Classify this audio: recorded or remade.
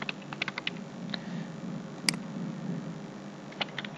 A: recorded